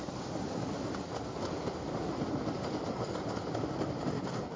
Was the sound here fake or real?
real